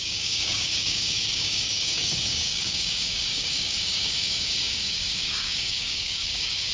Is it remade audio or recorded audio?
remade